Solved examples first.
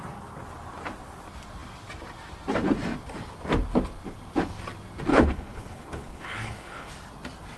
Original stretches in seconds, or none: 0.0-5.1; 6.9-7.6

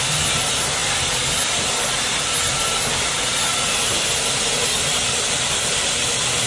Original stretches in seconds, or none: 0.0-6.5

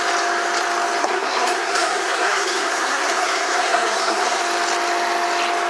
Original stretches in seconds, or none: 0.0-1.0; 4.4-5.7

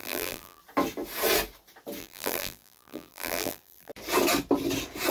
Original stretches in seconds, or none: 0.6-2.0; 3.9-5.1

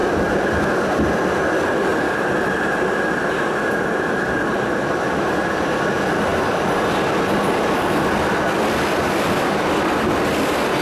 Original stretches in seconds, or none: 1.9-3.7

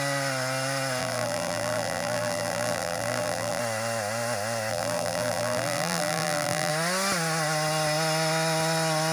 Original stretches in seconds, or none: 0.0-1.0; 3.6-4.7; 6.7-9.1

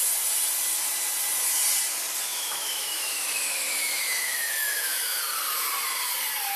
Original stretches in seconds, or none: 0.0-2.3; 5.2-6.6

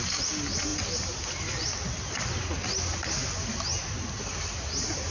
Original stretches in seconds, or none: 0.0-5.1